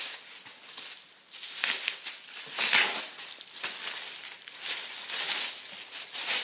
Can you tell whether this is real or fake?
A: real